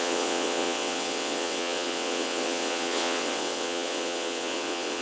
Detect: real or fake fake